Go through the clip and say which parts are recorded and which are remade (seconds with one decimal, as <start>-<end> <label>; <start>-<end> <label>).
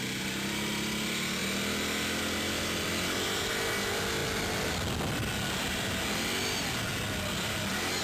0.0-1.4 recorded; 1.4-3.5 remade; 3.5-8.0 recorded